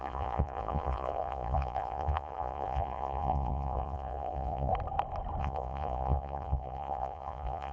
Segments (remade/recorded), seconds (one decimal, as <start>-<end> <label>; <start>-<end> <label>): 0.0-4.7 remade; 4.7-5.4 recorded; 5.4-7.7 remade

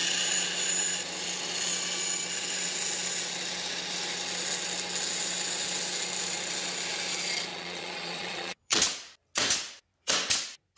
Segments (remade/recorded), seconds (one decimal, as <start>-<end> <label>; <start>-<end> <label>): 0.0-7.5 recorded; 7.5-8.8 remade; 8.8-10.8 recorded

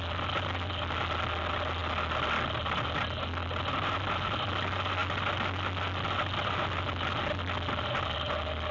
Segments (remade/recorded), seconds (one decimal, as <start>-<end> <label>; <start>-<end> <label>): 0.0-8.7 recorded

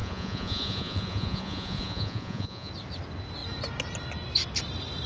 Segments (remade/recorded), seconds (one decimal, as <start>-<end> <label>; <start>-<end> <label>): 0.0-2.7 remade; 2.7-5.1 recorded

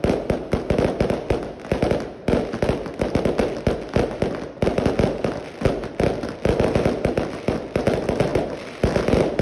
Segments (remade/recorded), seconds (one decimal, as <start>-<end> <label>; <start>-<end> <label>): 0.0-9.4 recorded